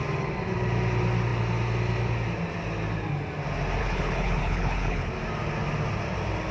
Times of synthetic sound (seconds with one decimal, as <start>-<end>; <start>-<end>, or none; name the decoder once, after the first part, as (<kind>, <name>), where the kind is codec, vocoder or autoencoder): 3.8-5.1 (codec, HILCodec)